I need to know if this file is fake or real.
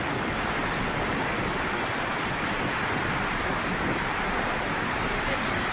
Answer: real